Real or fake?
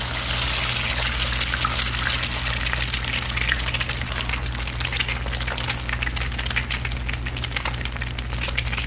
real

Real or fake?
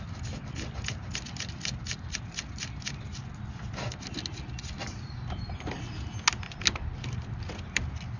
real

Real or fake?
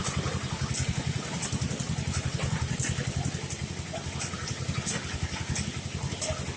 real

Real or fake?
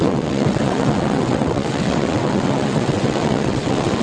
fake